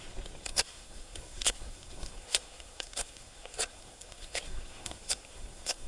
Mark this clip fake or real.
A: fake